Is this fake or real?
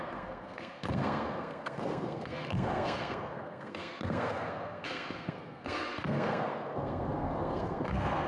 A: fake